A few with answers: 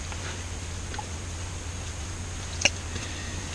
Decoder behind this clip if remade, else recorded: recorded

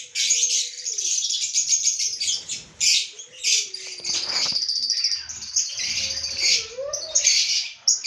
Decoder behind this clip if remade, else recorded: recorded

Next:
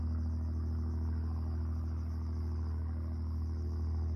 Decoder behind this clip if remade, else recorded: recorded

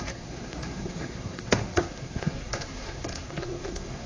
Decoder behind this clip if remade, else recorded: remade, codec, SNAC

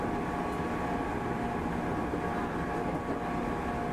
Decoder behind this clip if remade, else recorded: recorded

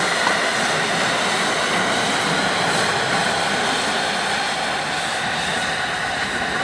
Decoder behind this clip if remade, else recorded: recorded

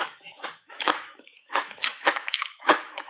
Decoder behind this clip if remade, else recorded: remade, autoencoder, DAC-VAE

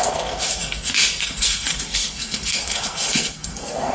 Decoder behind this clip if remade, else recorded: remade, codec, SNAC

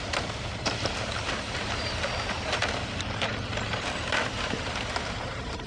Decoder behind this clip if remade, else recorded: remade, vocoder, BigVGAN v2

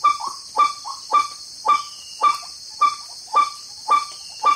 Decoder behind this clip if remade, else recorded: recorded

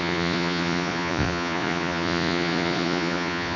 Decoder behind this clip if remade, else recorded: remade, vocoder, Vocos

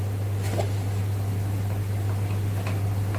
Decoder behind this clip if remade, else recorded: recorded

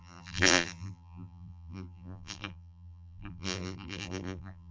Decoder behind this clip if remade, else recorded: remade, vocoder, BigVGAN v2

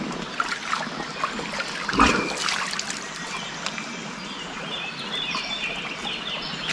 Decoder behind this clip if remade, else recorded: recorded